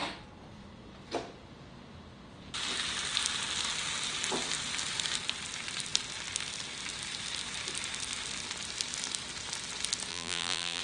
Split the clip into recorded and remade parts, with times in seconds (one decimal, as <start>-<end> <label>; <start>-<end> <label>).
0.0-10.1 recorded; 10.1-10.8 remade